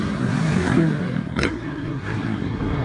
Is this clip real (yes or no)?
no